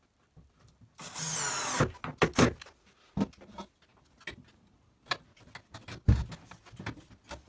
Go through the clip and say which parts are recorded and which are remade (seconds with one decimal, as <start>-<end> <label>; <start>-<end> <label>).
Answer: 0.0-7.5 recorded